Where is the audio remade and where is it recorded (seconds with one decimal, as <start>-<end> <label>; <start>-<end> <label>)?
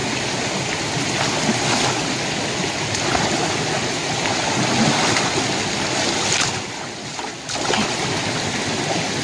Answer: 0.0-9.2 recorded